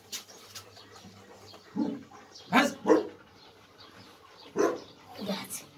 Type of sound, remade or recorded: recorded